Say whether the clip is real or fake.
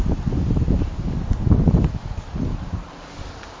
real